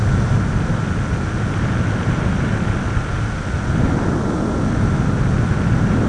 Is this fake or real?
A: real